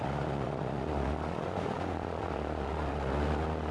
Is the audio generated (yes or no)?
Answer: yes